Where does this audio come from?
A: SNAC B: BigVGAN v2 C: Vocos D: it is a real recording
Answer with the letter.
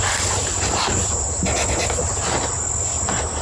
D